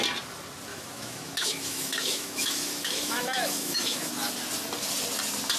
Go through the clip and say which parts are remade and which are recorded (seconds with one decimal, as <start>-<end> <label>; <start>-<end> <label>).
0.0-0.7 recorded; 0.7-4.1 remade; 4.1-5.6 recorded